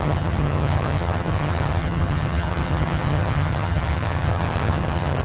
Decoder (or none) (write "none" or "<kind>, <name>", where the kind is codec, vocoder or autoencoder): vocoder, HiFi-GAN